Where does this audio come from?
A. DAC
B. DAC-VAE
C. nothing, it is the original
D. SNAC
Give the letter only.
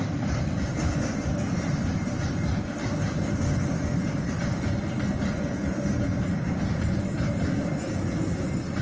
C